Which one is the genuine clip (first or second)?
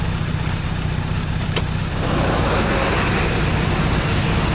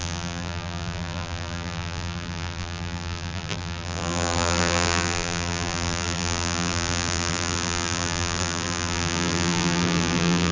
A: first